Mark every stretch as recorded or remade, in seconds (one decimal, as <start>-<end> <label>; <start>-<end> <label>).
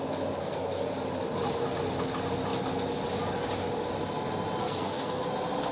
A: 0.0-0.4 recorded; 0.4-0.9 remade; 0.9-4.6 recorded; 4.6-5.2 remade; 5.2-5.7 recorded